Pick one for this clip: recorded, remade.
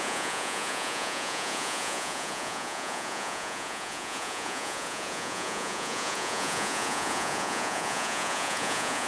remade